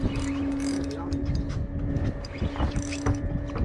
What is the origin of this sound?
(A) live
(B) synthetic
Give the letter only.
A